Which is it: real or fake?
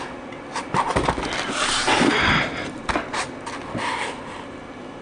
real